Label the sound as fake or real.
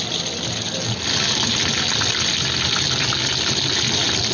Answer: real